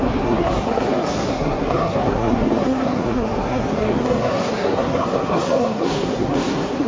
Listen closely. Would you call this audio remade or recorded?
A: remade